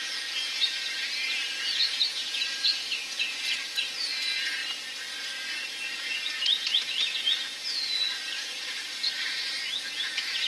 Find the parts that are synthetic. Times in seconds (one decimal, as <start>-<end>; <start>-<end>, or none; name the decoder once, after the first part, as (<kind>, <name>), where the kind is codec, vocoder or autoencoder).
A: 0.0-4.6 (vocoder, Vocos); 5.6-10.5